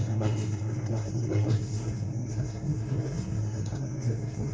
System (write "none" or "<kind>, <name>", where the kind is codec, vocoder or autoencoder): codec, SNAC